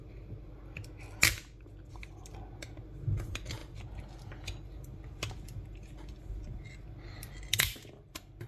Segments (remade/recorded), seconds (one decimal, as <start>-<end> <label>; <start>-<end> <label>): 0.0-8.5 recorded